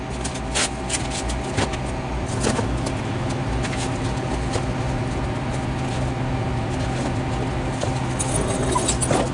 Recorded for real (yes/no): yes